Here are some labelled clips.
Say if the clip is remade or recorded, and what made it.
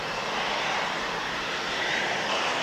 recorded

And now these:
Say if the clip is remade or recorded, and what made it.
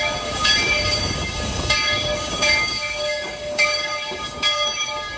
remade, codec, DAC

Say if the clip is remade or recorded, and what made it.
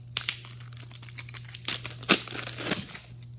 recorded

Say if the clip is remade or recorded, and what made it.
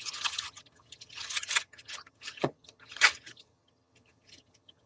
remade, vocoder, HiFi-GAN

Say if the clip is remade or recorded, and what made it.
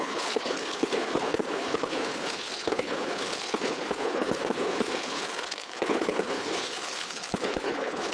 remade, codec, HILCodec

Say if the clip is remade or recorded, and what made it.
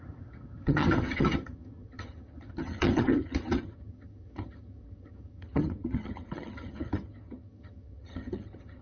remade, vocoder, HiFi-GAN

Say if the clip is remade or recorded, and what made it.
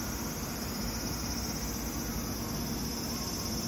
recorded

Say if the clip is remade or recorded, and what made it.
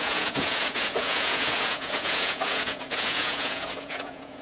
remade, vocoder, Vocos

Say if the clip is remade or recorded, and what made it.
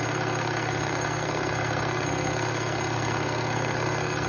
remade, codec, SNAC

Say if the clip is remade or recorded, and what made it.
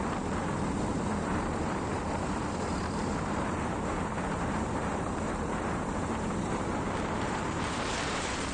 remade, vocoder, BigVGAN v2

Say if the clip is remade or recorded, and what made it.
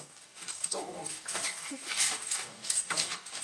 remade, codec, DAC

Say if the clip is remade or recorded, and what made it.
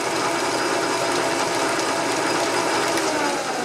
recorded